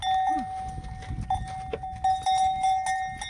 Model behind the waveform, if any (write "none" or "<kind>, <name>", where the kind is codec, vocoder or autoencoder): none